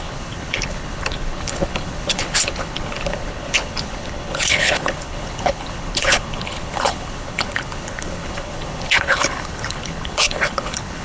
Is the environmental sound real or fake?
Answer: fake